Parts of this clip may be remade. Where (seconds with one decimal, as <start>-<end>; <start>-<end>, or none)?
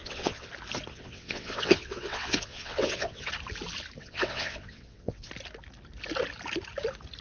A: 0.0-0.5; 0.9-3.3; 4.0-5.3